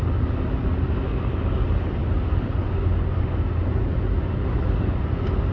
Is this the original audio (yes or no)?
yes